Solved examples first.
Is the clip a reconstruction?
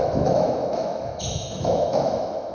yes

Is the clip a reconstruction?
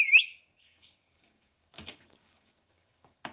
yes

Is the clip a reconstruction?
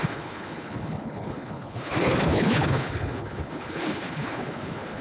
yes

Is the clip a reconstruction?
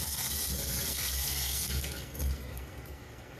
yes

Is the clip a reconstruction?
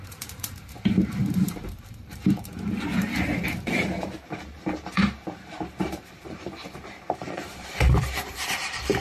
yes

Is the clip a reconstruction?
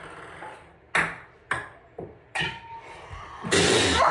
no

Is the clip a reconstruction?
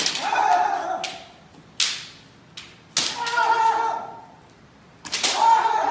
no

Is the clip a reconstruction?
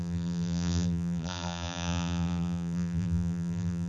yes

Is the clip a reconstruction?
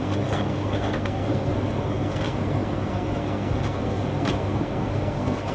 yes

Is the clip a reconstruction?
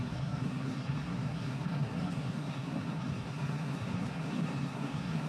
yes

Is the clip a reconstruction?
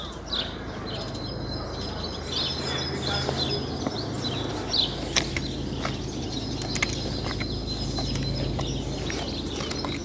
no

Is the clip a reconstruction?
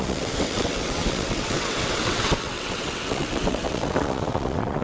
yes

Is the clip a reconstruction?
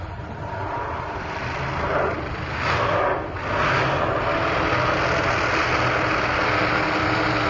no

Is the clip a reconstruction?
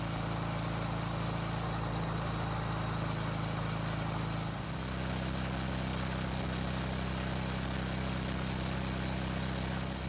no